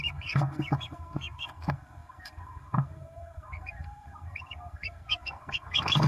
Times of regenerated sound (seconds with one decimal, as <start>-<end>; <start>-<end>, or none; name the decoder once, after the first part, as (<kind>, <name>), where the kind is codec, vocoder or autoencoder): 0.0-6.1 (codec, SNAC)